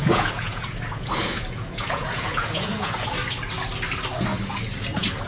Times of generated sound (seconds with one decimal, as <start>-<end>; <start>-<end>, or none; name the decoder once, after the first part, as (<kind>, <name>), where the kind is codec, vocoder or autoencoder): 0.0-3.1 (vocoder, Vocos); 4.3-5.3